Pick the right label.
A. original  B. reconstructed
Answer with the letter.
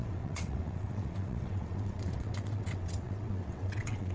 B